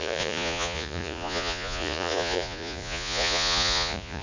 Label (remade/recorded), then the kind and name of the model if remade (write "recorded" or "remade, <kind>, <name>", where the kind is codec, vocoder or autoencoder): remade, vocoder, Vocos